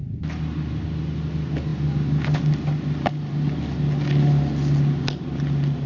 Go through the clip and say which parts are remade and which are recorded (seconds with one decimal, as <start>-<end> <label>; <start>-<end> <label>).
0.0-5.9 recorded